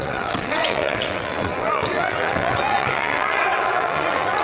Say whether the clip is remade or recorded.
remade